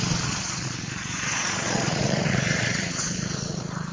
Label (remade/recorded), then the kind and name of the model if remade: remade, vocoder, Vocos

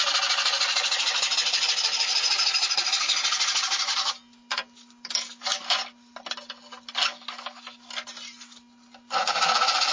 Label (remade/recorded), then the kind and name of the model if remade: recorded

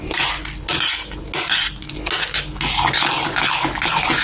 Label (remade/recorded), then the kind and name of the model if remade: recorded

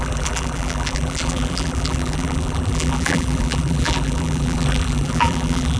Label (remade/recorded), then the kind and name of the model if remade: remade, vocoder, BigVGAN v2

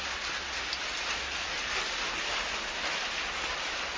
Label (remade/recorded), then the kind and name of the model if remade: recorded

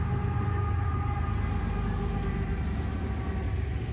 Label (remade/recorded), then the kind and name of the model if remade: recorded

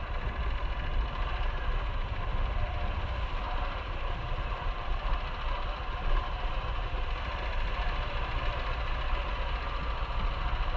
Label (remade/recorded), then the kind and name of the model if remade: recorded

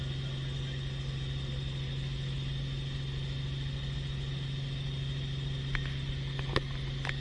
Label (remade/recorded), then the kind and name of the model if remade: recorded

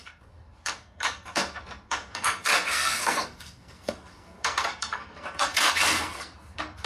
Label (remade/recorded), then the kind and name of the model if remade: remade, codec, SNAC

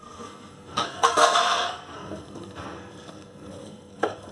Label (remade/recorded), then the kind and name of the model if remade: remade, codec, SNAC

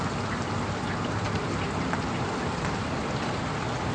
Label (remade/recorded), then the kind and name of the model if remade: recorded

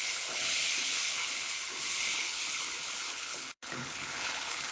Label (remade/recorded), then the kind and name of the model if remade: remade, codec, HILCodec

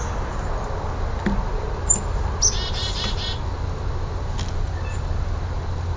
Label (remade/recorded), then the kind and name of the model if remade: recorded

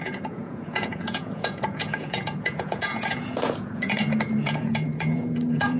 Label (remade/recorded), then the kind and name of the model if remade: remade, vocoder, Vocos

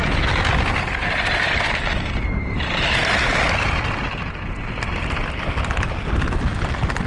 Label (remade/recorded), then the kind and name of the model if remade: recorded